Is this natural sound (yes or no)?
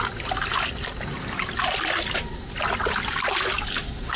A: yes